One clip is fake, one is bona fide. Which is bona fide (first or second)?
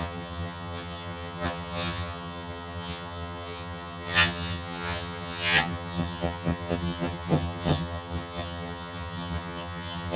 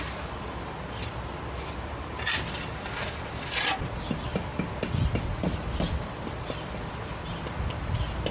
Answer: second